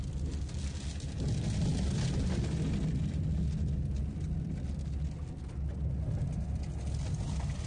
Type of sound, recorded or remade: recorded